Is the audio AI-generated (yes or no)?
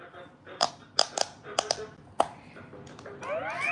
no